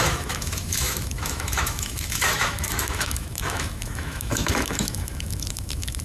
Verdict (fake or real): fake